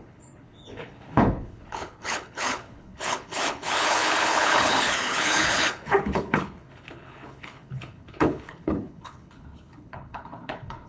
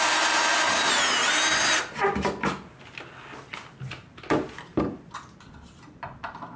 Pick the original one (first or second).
second